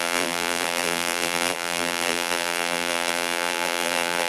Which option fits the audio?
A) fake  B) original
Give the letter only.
A